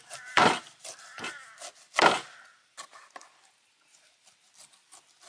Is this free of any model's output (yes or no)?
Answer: yes